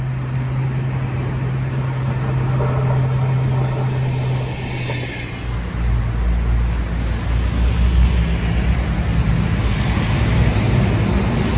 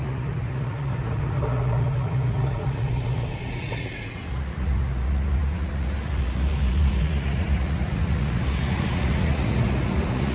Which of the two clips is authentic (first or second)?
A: first